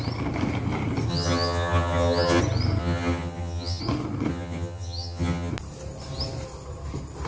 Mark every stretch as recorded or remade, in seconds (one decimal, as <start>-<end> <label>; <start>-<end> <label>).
0.0-1.1 recorded; 1.1-2.4 remade; 2.4-2.8 recorded; 2.8-3.8 remade; 3.8-4.3 recorded; 4.3-5.5 remade; 5.5-7.3 recorded

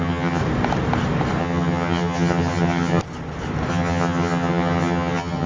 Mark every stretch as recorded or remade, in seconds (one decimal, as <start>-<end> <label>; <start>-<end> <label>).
0.0-0.4 remade; 0.4-1.4 recorded; 1.4-3.0 remade; 3.0-3.7 recorded; 3.7-5.5 remade

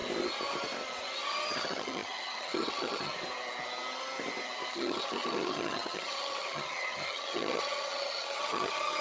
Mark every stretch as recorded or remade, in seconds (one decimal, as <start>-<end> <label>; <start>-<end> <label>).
0.0-1.5 recorded; 1.5-3.1 remade; 3.1-4.7 recorded; 4.7-9.0 remade

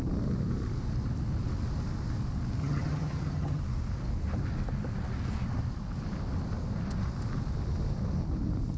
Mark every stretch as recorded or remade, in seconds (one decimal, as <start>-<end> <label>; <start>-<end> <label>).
0.0-2.6 recorded; 2.6-3.6 remade; 3.6-8.8 recorded

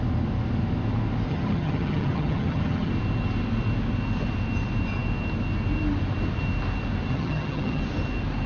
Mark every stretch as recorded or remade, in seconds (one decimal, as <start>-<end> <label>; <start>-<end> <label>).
0.0-1.3 recorded; 1.3-2.9 remade; 2.9-7.1 recorded; 7.1-7.8 remade; 7.8-8.5 recorded

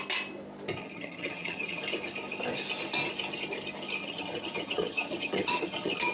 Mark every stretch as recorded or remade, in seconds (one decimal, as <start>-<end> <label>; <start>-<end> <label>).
0.0-0.8 recorded; 0.8-1.8 remade; 1.8-4.0 recorded; 4.0-6.1 remade